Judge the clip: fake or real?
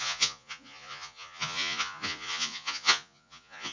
fake